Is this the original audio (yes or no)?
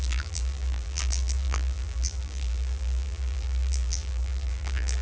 no